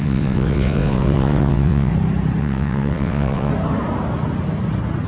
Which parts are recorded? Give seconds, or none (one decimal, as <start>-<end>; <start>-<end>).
1.9-2.4; 3.5-5.1